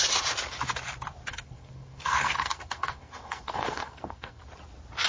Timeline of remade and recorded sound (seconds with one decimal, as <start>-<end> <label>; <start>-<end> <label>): 0.0-1.3 recorded; 1.3-4.4 remade; 4.4-5.1 recorded